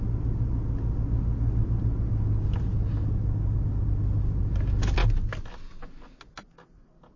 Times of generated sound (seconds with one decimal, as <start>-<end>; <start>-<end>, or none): none